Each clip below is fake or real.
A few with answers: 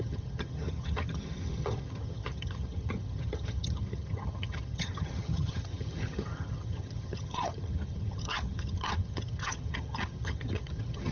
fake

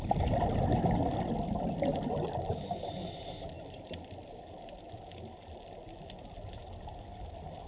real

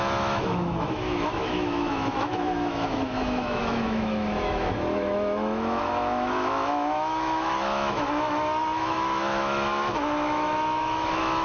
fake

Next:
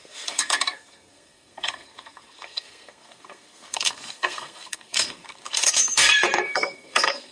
fake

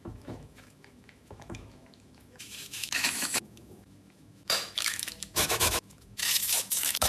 fake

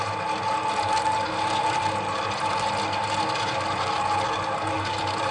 real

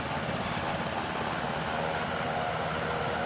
real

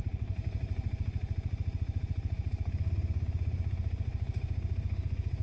fake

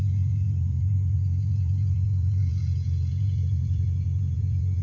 fake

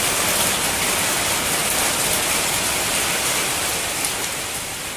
real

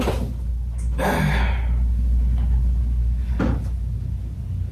real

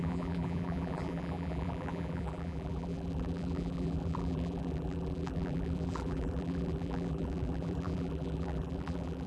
fake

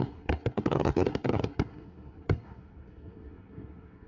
fake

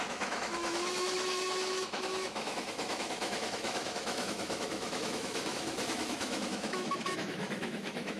fake